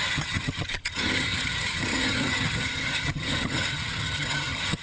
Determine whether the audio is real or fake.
fake